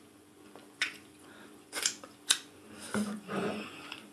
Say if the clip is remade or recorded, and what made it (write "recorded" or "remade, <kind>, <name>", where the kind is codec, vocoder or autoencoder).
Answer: remade, vocoder, Vocos